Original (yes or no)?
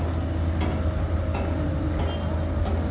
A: yes